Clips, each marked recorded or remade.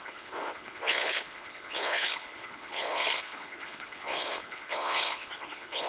remade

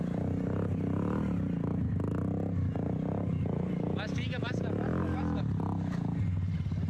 recorded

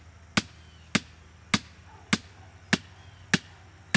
recorded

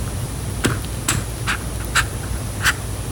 recorded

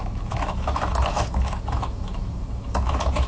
remade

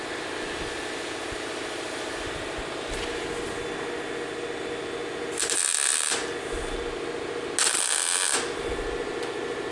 recorded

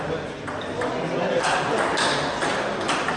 recorded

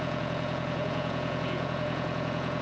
remade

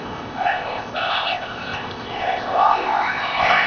remade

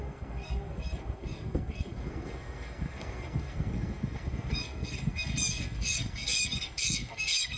remade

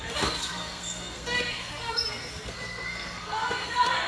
remade